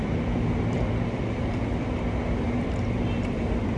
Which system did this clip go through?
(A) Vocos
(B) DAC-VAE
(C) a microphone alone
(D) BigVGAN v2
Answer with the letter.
D